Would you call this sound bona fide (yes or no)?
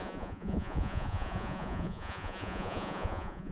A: no